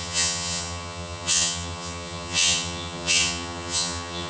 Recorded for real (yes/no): no